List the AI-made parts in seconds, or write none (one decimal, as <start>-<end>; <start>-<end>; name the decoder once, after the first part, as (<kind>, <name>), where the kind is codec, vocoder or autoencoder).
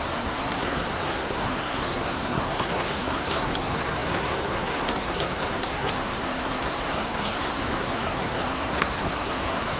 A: 0.0-9.8 (codec, SNAC)